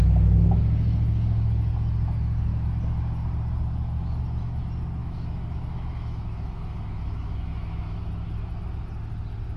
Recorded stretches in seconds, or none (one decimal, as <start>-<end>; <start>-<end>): 0.0-5.0; 8.1-9.6